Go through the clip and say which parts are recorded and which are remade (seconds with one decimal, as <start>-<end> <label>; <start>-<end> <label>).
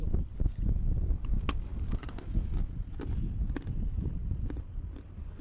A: 0.0-0.7 remade; 0.7-4.2 recorded; 4.2-4.8 remade; 4.8-5.4 recorded